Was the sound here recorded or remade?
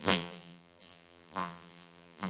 remade